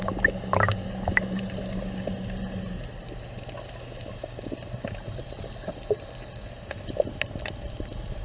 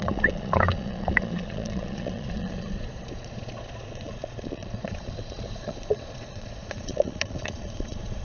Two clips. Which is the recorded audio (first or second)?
first